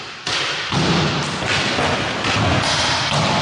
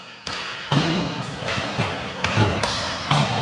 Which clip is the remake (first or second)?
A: second